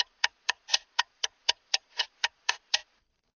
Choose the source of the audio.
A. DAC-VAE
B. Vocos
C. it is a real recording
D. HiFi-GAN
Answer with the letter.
B